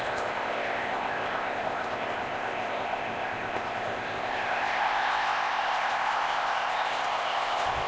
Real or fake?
fake